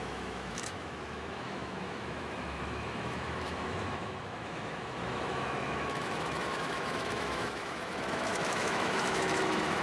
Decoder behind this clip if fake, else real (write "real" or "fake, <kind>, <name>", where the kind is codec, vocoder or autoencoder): fake, autoencoder, DAC-VAE